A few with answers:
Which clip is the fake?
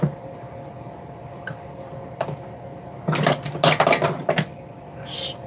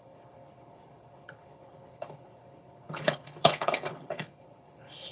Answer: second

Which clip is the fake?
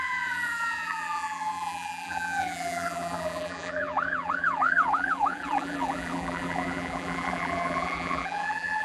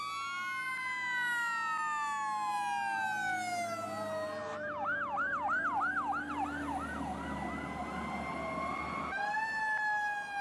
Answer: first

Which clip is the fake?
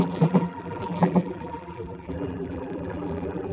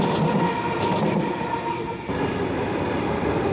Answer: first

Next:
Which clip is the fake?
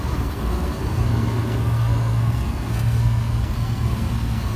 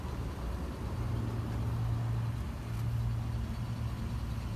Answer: first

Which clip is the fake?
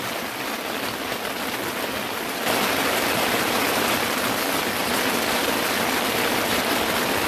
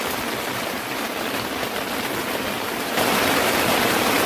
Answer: second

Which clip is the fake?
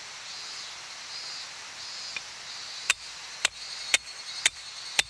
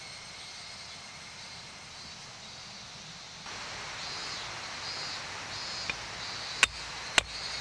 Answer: first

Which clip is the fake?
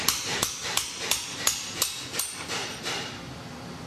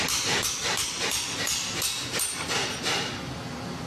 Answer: first